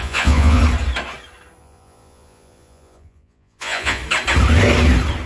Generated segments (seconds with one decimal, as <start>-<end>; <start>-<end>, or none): 0.0-0.6; 1.6-4.0